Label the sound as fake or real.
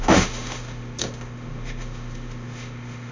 fake